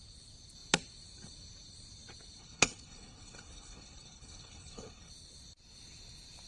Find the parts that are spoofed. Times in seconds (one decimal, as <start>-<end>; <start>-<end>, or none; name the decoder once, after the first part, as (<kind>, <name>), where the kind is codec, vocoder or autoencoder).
2.4-5.1 (codec, HILCodec)